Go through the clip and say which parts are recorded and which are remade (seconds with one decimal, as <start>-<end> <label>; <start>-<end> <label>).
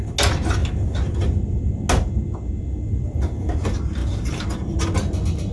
0.0-5.5 recorded